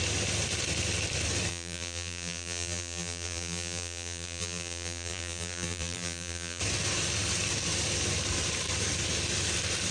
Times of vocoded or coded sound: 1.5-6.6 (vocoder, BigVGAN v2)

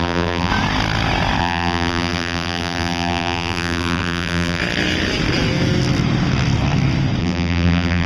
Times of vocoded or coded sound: 0.0-0.5 (vocoder, BigVGAN v2); 1.4-4.6; 7.2-8.1

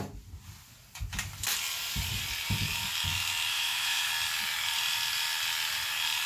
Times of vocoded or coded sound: 3.5-4.1 (autoencoder, DAC-VAE)

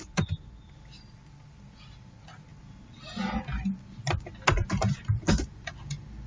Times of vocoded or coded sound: none

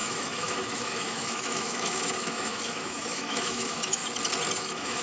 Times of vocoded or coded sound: 0.0-4.0 (autoencoder, DAC-VAE); 4.6-5.0

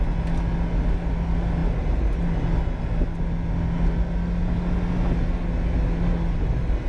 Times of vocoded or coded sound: none

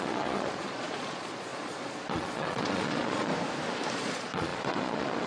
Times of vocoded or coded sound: 0.0-3.3 (vocoder, Vocos); 3.9-5.3